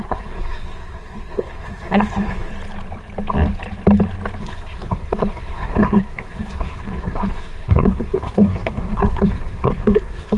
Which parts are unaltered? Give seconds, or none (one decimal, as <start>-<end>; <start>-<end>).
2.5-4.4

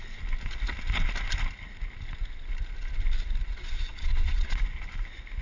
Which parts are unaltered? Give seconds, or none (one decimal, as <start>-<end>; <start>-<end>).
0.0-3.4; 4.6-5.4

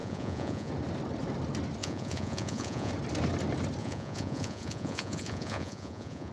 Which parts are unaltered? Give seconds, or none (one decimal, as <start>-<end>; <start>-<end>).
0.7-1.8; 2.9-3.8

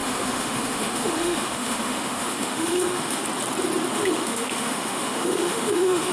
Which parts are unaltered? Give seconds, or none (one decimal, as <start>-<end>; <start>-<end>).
3.2-3.9

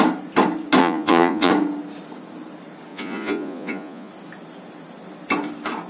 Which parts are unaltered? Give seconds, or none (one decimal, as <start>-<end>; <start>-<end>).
0.0-0.8; 1.5-2.9; 4.1-5.9